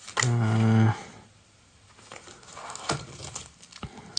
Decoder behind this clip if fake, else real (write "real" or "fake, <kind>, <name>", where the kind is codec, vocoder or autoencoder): real